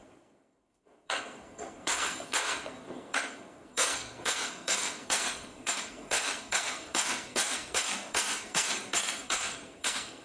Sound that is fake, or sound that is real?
fake